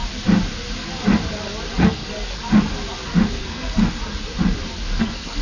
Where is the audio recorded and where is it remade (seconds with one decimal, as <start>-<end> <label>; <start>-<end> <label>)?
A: 0.0-1.8 recorded; 1.8-2.4 remade; 2.4-3.4 recorded; 3.4-3.8 remade; 3.8-5.0 recorded; 5.0-5.4 remade